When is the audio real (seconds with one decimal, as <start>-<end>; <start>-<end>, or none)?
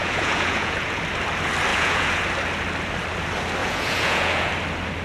1.0-1.7; 2.2-3.6; 4.5-5.0